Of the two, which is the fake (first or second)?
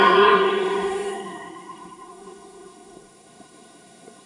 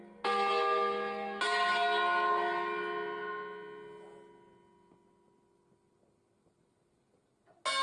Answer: first